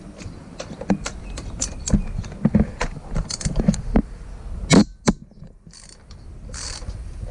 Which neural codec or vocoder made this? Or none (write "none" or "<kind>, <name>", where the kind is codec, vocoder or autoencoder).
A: none